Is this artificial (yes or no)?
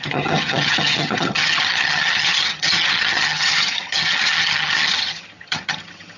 yes